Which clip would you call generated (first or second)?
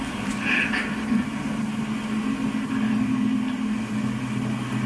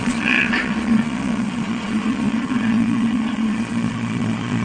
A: second